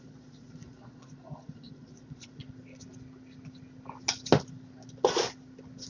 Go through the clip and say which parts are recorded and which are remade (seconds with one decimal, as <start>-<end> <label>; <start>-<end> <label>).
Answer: 0.0-2.4 remade; 2.4-5.9 recorded

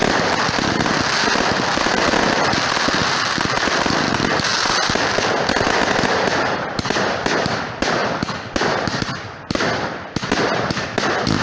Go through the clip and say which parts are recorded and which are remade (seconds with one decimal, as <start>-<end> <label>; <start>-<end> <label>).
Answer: 0.0-11.4 recorded

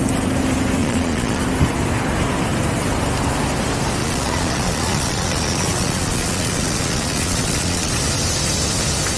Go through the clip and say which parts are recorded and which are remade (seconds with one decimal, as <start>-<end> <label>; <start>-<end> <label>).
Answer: 0.0-0.8 recorded; 0.8-1.4 remade; 1.4-4.0 recorded; 4.0-7.9 remade; 7.9-9.2 recorded

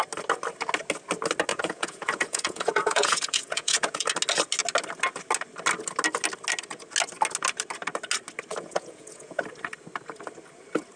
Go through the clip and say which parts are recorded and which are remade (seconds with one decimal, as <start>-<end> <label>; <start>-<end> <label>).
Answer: 0.0-1.5 recorded; 1.5-4.1 remade; 4.1-8.5 recorded; 8.5-9.4 remade; 9.4-11.0 recorded

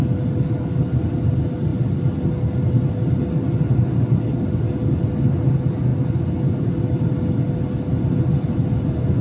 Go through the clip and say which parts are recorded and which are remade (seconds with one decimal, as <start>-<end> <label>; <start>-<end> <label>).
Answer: 0.0-9.2 recorded

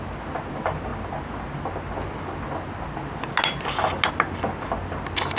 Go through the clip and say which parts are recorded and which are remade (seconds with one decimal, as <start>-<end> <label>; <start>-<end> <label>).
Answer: 0.0-5.4 recorded

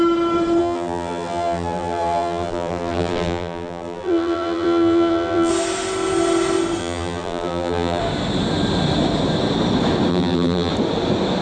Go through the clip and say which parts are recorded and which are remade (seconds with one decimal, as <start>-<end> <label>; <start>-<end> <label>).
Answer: 0.0-0.6 recorded; 0.6-5.5 remade; 5.5-6.8 recorded; 6.8-8.0 remade; 8.0-10.1 recorded; 10.1-10.7 remade; 10.7-11.4 recorded